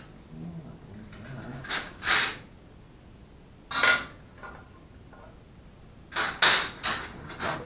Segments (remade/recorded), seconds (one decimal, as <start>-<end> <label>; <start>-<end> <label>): 0.0-1.5 recorded; 1.5-2.1 remade; 2.1-7.7 recorded